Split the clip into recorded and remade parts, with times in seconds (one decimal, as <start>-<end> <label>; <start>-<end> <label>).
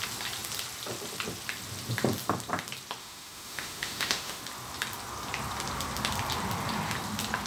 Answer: 0.0-3.0 recorded; 3.0-4.4 remade; 4.4-7.5 recorded